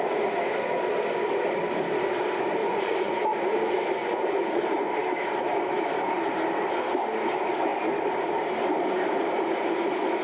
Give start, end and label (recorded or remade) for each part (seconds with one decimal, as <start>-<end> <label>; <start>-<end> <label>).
0.0-2.6 recorded; 2.6-3.1 remade; 3.1-4.0 recorded; 4.0-4.6 remade; 4.6-10.2 recorded